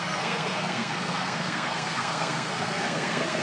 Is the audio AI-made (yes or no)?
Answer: yes